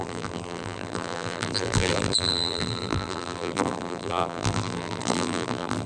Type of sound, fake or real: fake